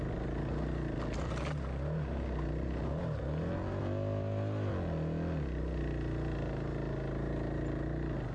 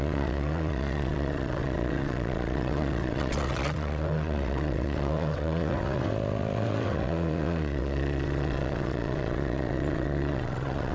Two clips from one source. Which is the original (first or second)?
first